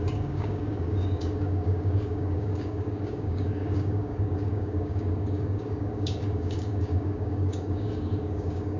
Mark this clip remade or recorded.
remade